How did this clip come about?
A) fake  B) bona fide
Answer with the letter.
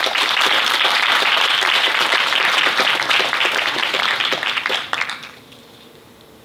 A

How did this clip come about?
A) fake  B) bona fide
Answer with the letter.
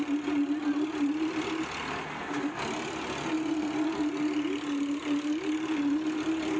B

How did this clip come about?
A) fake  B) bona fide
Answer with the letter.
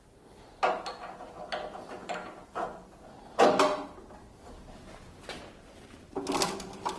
B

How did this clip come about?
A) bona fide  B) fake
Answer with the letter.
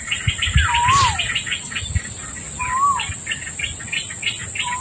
A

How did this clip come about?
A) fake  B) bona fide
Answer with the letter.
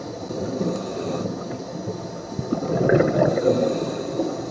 B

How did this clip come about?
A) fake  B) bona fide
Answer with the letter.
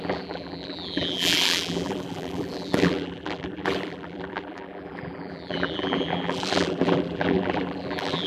A